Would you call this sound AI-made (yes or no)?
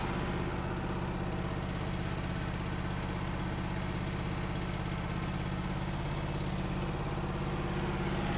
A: no